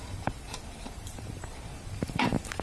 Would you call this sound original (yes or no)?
no